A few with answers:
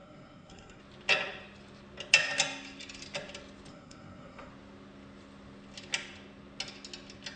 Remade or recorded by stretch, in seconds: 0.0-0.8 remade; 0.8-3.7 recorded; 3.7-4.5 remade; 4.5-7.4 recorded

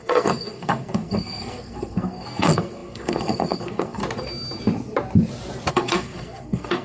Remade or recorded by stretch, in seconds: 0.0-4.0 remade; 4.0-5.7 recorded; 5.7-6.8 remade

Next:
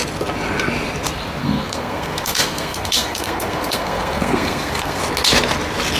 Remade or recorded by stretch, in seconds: 0.0-1.4 recorded; 1.4-5.0 remade; 5.0-6.0 recorded